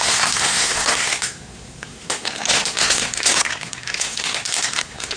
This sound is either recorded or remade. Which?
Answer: remade